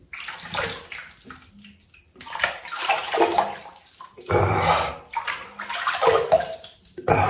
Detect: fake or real real